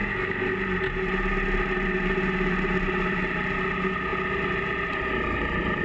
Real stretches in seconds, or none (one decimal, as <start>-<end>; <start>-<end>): 0.0-5.8